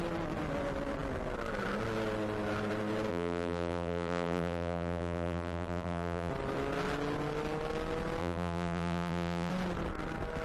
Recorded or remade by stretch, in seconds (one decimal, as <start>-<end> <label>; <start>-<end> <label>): 0.0-3.1 recorded; 3.1-6.3 remade; 6.3-8.2 recorded; 8.2-9.5 remade; 9.5-10.4 recorded